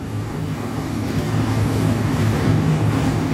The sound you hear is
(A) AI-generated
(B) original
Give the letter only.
A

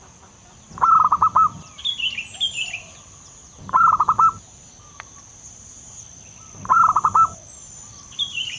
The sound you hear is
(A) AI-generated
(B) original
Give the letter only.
A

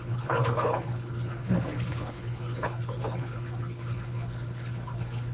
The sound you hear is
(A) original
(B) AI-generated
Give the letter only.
B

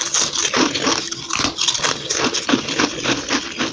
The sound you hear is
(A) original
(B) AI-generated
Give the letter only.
A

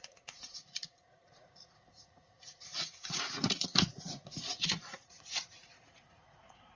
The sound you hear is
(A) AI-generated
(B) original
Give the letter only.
A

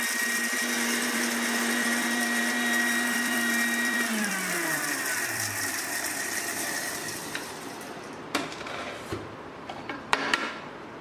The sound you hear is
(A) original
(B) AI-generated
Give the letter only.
B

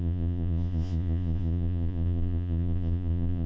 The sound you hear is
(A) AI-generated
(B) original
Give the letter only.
A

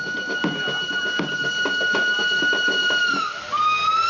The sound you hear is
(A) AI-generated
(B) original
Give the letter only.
B